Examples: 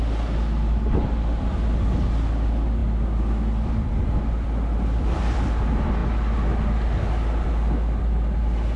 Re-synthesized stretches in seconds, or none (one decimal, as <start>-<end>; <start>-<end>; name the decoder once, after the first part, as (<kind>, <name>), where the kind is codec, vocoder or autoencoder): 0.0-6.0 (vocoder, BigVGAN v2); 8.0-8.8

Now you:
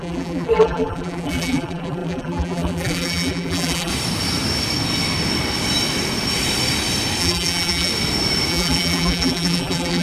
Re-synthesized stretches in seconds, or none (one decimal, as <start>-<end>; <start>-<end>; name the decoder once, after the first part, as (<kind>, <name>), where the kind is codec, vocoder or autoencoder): 0.0-3.9 (vocoder, BigVGAN v2); 7.2-7.9; 8.5-10.0

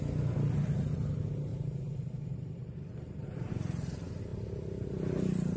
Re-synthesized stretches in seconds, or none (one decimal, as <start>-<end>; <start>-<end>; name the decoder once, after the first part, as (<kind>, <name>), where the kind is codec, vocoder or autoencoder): 1.5-3.5 (vocoder, BigVGAN v2)

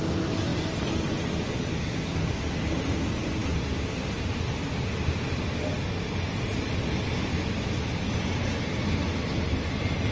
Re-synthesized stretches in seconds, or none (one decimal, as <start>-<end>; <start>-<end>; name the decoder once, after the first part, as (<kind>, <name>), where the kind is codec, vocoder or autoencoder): 3.5-6.1 (vocoder, BigVGAN v2); 7.3-8.0